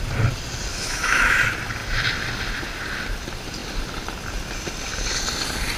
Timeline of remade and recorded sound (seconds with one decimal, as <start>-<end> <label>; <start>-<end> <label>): 0.0-0.7 recorded; 0.7-1.4 remade; 1.4-5.8 recorded